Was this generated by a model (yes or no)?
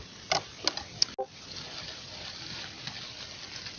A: no